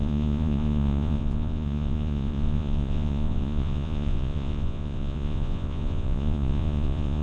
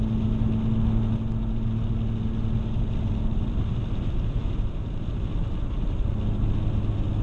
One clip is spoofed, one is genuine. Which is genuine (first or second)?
second